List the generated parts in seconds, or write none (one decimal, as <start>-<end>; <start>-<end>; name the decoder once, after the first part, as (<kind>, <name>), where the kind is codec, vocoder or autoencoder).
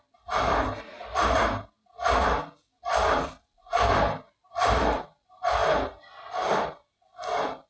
none